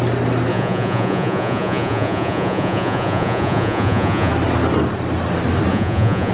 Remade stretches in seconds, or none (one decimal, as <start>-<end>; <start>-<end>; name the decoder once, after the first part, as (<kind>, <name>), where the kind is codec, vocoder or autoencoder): 0.5-4.3 (vocoder, Vocos); 5.7-6.3